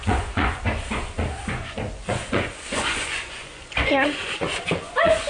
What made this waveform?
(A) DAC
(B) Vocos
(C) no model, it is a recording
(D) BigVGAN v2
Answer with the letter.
B